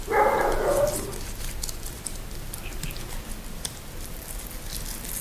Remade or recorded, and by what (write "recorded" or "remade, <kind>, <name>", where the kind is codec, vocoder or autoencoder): recorded